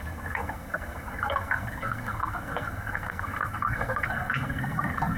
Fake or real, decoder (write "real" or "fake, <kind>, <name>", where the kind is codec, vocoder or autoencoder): fake, codec, SNAC